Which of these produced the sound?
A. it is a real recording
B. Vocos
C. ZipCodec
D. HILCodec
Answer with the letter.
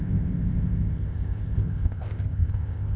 C